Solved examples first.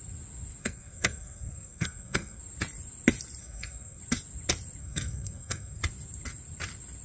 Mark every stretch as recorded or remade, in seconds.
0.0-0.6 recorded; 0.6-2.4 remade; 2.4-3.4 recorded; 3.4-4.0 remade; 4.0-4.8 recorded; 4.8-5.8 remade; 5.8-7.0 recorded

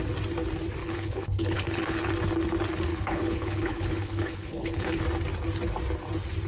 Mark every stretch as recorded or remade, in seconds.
0.0-0.8 recorded; 0.8-2.1 remade; 2.1-2.9 recorded; 2.9-5.0 remade; 5.0-6.5 recorded

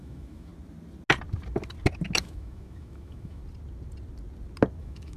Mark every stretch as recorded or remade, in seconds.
0.0-0.5 remade; 0.5-2.2 recorded; 2.2-3.4 remade; 3.4-4.8 recorded; 4.8-5.2 remade

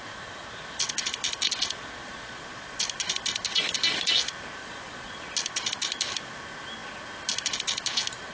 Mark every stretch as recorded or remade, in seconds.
0.0-2.0 recorded; 2.0-2.7 remade; 2.7-4.6 recorded; 4.6-5.2 remade; 5.2-8.3 recorded